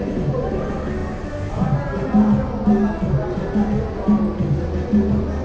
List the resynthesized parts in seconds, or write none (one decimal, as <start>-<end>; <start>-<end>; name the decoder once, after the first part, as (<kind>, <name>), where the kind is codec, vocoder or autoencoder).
none